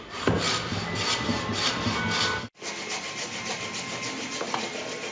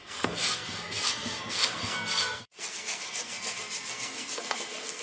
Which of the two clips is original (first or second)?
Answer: first